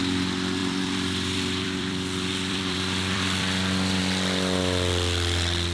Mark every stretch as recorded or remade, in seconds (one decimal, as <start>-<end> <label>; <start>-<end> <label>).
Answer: 0.0-0.6 recorded; 0.6-4.0 remade; 4.0-5.7 recorded